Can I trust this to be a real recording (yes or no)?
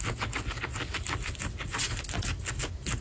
yes